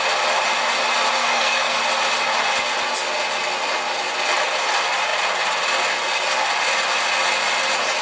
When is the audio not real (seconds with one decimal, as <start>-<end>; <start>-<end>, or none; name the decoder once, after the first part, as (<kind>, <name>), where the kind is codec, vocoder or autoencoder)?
1.2-1.8 (codec, SNAC)